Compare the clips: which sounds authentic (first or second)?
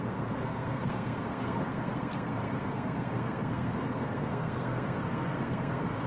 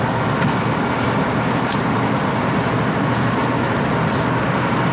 second